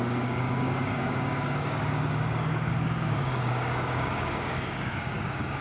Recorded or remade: remade